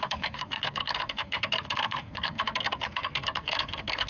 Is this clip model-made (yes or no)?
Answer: yes